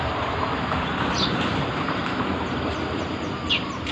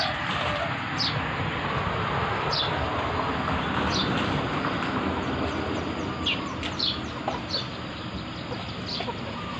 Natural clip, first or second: second